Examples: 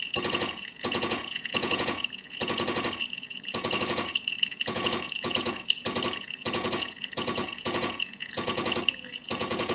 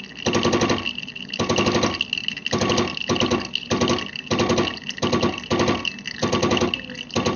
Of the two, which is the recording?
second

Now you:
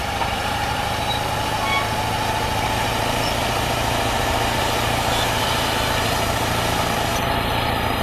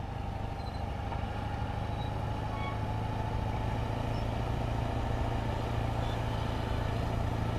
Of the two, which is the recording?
second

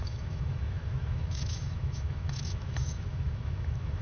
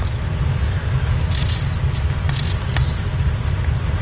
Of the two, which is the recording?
second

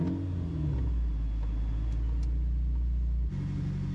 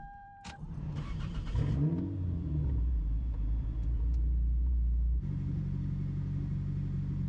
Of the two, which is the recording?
first